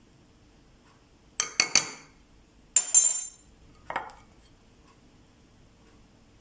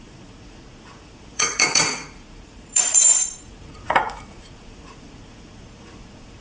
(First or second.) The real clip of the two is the first